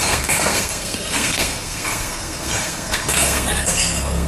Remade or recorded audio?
remade